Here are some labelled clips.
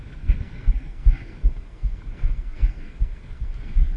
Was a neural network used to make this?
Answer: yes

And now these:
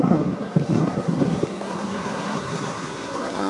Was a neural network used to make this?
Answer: yes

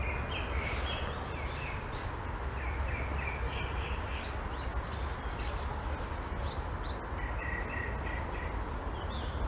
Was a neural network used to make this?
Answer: no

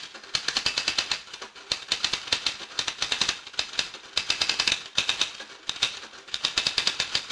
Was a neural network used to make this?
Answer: no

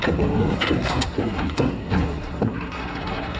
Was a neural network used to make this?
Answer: yes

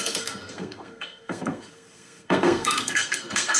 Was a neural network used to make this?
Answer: yes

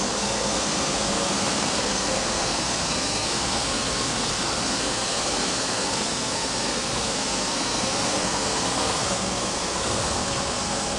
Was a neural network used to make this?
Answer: yes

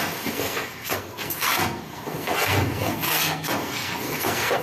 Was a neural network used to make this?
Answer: yes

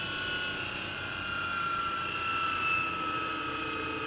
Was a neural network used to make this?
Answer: no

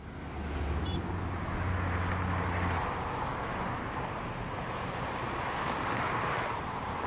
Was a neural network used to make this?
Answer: no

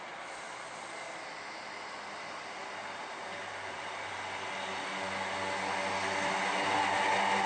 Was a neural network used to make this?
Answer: no